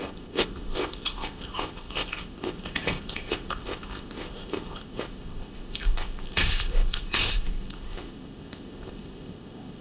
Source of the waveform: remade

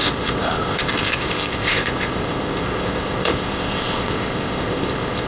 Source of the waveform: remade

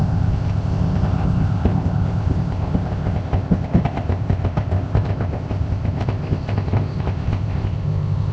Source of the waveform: remade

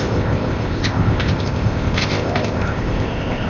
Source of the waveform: remade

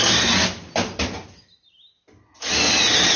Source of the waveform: recorded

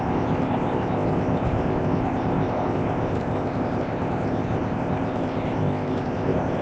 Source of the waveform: remade